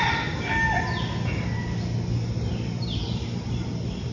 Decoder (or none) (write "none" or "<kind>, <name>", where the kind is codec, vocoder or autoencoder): none